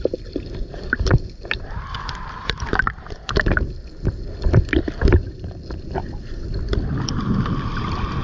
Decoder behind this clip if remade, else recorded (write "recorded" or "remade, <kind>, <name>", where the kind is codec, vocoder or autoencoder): remade, vocoder, BigVGAN v2